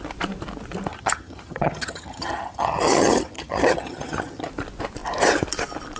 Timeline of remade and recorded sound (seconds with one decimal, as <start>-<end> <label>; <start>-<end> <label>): 0.0-0.9 recorded; 0.9-4.5 remade; 4.5-6.0 recorded